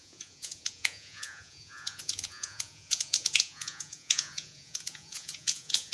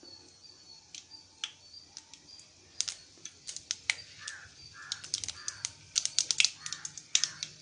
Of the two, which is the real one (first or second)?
second